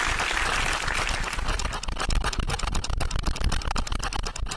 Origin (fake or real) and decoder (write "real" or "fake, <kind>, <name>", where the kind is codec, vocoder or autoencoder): real